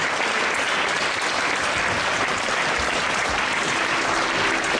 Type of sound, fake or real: real